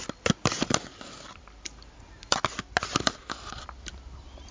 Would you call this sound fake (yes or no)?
no